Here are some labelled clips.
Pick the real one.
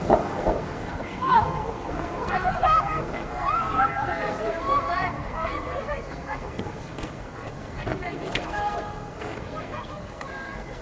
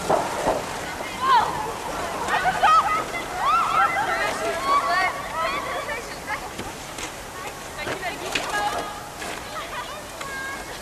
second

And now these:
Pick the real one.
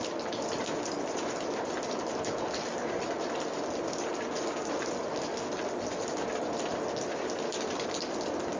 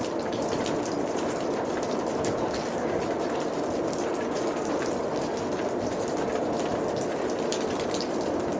first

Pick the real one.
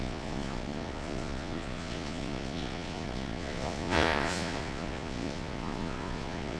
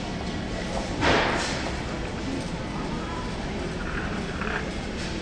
second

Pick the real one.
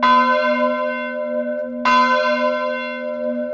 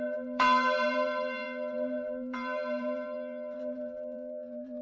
first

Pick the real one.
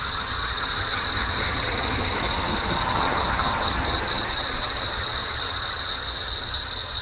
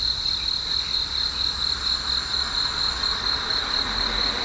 second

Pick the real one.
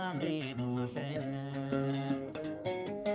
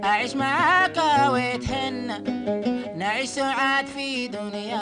second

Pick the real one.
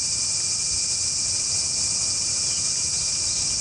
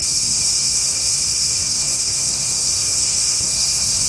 first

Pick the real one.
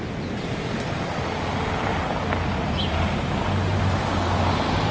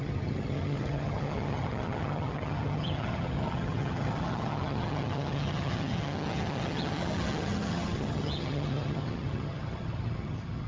first